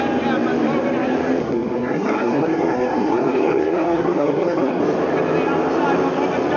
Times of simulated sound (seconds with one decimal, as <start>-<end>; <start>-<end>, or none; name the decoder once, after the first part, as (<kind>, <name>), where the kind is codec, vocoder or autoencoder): 1.4-4.8 (codec, SNAC)